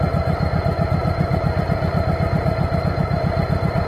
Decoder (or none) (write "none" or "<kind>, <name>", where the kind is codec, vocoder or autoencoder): none